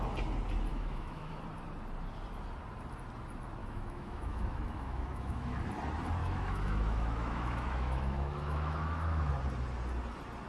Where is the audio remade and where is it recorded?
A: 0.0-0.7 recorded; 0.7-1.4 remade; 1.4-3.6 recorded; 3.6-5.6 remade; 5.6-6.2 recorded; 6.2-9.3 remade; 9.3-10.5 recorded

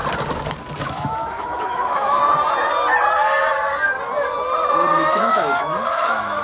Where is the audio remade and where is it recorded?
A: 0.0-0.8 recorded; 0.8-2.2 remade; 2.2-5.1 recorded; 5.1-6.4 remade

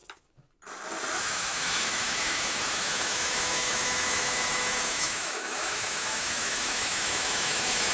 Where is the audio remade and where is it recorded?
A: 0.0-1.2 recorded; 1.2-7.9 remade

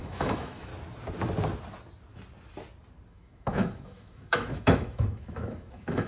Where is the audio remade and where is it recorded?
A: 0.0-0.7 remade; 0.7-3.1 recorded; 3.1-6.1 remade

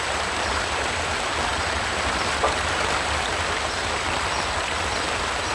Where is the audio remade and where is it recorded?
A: 0.0-5.5 recorded

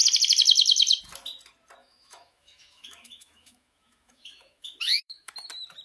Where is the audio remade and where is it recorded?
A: 0.0-1.8 recorded; 1.8-5.3 remade; 5.3-5.8 recorded

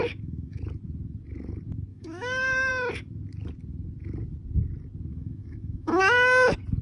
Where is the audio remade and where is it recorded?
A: 0.0-0.6 remade; 0.6-1.9 recorded; 1.9-2.7 remade; 2.7-5.1 recorded; 5.1-6.0 remade; 6.0-6.8 recorded

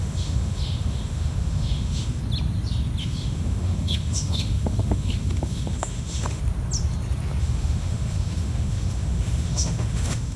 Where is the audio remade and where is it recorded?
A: 0.0-2.2 remade; 2.2-3.0 recorded; 3.0-6.4 remade; 6.4-7.4 recorded; 7.4-10.4 remade